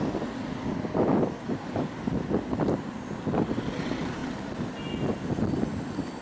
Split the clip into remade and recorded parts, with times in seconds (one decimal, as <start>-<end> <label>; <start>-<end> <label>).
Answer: 0.0-6.2 recorded